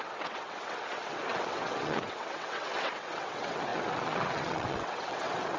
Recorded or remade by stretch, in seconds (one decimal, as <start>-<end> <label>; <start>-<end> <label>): 0.0-5.6 remade